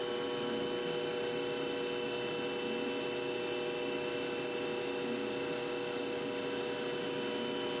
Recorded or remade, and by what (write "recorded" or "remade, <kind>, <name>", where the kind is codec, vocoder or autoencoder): recorded